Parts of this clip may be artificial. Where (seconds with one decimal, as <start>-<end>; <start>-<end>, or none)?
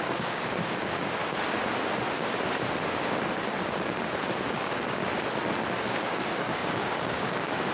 0.0-1.2; 4.5-5.1; 5.9-7.7